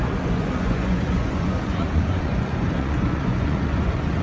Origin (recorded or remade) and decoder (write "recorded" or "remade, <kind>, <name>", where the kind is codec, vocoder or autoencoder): remade, vocoder, Vocos